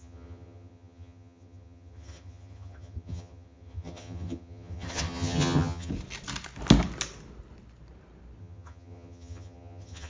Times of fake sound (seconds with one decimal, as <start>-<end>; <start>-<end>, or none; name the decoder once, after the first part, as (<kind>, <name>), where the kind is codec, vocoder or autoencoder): 0.0-5.9 (vocoder, HiFi-GAN); 8.4-10.1